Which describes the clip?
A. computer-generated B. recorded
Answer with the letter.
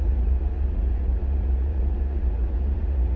A